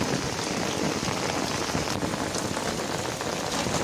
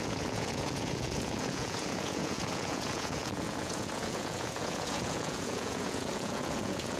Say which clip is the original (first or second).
first